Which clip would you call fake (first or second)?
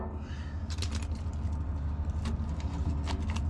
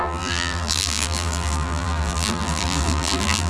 second